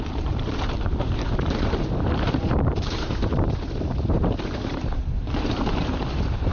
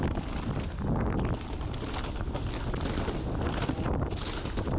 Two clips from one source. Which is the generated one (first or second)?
first